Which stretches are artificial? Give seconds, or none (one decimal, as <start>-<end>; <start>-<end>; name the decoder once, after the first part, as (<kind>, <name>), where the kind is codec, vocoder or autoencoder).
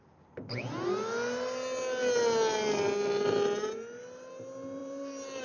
4.8-5.4 (vocoder, BigVGAN v2)